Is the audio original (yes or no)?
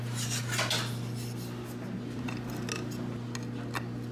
yes